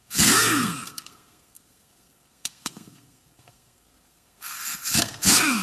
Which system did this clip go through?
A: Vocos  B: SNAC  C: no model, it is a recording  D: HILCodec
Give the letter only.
B